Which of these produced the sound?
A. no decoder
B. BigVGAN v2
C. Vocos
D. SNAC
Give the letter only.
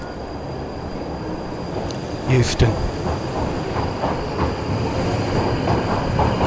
A